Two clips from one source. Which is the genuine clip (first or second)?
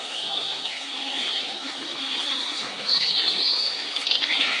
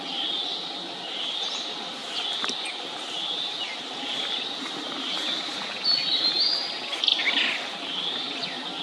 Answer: second